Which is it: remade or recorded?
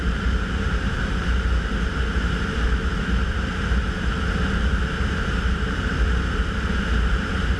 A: remade